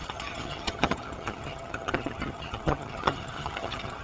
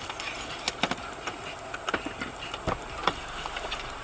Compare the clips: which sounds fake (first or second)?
first